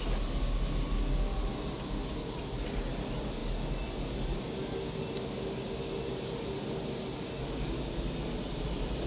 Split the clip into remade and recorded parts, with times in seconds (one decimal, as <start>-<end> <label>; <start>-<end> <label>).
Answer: 0.0-9.1 recorded